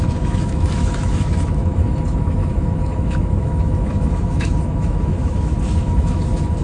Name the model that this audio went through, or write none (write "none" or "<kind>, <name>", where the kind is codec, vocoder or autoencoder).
autoencoder, DAC-VAE